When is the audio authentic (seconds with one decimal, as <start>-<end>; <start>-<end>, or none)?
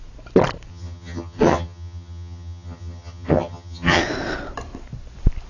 0.0-0.7; 4.0-5.5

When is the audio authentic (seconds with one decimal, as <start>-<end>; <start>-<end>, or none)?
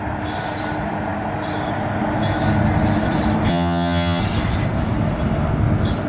0.0-3.5; 4.2-6.1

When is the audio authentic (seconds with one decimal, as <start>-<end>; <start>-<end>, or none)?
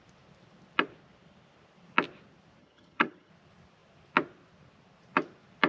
0.0-2.6; 3.3-5.7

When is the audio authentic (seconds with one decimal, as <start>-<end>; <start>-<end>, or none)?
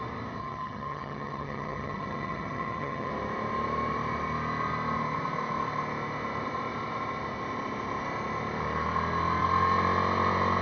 0.0-0.4; 3.1-10.6